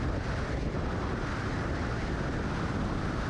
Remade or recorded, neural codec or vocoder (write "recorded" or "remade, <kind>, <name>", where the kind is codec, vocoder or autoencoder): recorded